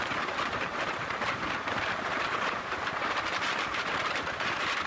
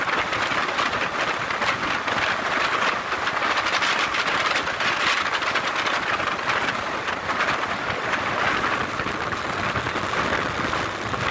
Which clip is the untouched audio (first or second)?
second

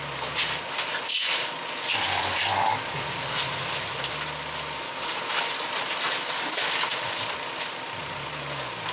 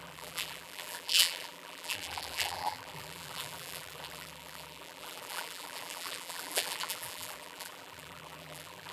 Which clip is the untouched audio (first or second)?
first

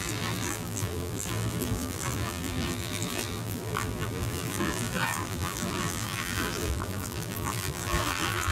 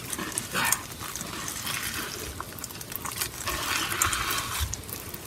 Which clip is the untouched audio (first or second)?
second